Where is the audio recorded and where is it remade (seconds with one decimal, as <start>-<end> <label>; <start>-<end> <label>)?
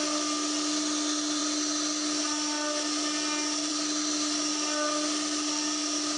0.0-6.2 recorded